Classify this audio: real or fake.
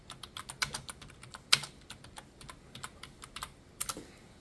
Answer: real